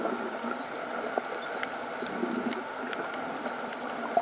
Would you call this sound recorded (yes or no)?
yes